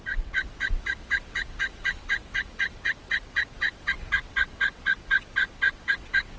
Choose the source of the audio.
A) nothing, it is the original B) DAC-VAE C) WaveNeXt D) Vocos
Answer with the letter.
C